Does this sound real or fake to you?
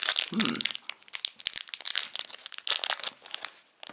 real